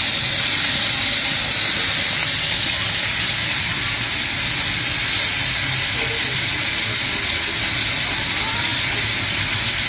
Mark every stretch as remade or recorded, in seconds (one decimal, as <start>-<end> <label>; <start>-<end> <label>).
0.0-9.9 recorded